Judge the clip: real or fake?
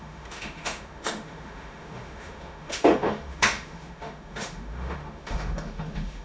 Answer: fake